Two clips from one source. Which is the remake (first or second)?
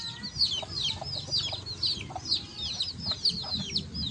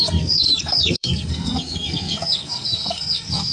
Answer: second